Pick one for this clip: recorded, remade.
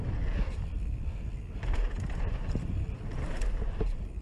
recorded